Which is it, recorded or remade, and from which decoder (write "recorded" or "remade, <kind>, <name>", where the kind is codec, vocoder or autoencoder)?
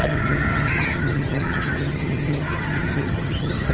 remade, vocoder, HiFi-GAN